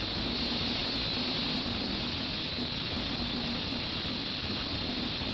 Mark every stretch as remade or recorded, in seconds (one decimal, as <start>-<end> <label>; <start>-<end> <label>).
0.0-5.3 recorded